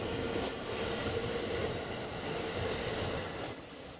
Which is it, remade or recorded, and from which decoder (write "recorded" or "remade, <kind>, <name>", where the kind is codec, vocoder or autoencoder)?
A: recorded